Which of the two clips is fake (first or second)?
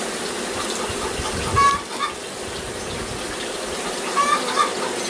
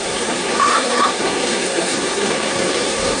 second